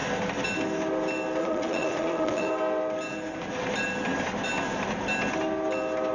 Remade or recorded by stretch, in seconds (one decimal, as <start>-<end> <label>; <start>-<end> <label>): 0.0-1.4 recorded; 1.4-2.5 remade; 2.5-6.1 recorded